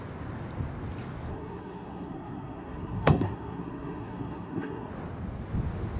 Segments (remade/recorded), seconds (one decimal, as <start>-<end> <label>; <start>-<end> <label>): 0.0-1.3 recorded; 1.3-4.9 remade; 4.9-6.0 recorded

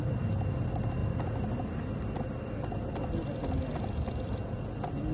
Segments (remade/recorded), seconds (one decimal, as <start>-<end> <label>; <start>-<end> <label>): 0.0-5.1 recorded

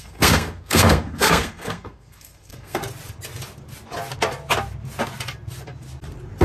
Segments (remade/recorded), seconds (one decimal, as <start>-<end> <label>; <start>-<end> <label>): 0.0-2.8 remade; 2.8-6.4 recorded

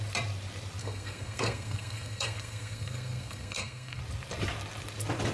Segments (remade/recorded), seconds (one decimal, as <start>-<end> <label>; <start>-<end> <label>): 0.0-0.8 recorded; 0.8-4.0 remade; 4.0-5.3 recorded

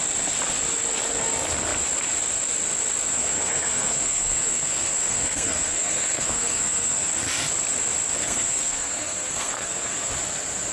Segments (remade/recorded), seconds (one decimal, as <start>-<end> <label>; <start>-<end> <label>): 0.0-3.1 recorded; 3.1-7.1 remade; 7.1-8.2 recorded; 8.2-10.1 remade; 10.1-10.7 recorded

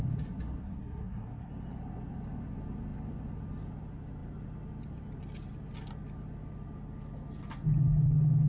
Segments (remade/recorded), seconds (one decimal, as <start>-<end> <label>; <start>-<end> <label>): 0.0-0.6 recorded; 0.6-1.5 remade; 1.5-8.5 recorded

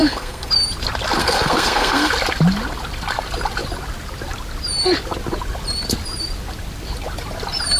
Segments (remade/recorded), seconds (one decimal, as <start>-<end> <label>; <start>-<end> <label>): 0.0-0.5 remade; 0.5-1.2 recorded; 1.2-2.1 remade; 2.1-7.8 recorded